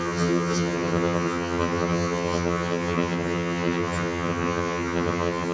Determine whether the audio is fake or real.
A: fake